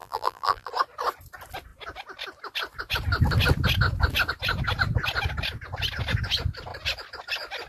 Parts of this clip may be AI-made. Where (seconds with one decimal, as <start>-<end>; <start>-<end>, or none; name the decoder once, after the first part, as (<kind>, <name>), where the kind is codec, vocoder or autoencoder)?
0.0-0.7 (vocoder, BigVGAN v2)